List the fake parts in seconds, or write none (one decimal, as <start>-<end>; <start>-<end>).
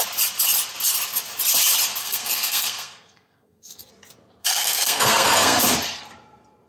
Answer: 2.0-3.9; 4.4-5.6